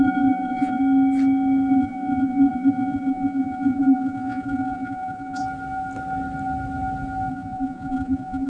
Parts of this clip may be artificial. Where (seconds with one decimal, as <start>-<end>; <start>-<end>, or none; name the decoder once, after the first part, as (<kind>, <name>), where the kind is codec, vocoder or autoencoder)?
0.0-0.8 (vocoder, Vocos); 1.7-5.4; 7.3-8.5